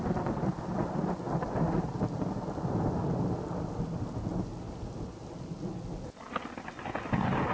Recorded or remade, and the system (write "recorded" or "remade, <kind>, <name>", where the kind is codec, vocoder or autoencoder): recorded